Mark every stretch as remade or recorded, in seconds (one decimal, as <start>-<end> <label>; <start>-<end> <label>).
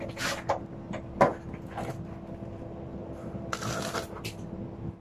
0.0-5.0 recorded